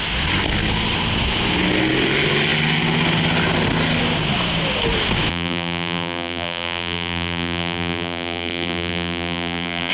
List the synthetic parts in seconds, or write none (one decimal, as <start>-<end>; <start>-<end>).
5.3-9.9